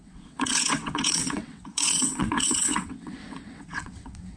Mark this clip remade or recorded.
remade